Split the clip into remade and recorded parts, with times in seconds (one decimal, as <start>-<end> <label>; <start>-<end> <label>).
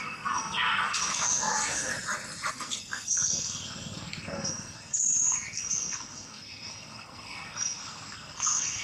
0.0-1.9 remade; 1.9-2.5 recorded; 2.5-8.8 remade